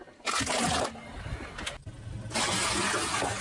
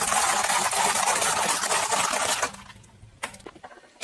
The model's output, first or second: second